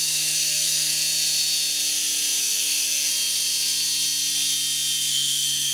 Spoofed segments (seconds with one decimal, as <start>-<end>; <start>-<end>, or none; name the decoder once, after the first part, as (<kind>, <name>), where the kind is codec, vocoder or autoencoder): 0.0-0.9 (codec, SNAC); 2.4-3.1; 5.1-5.7